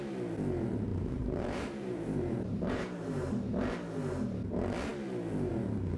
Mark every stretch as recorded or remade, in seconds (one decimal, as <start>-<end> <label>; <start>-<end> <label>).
0.0-0.9 recorded; 0.9-3.5 remade; 3.5-6.0 recorded